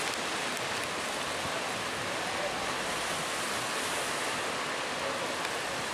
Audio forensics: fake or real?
real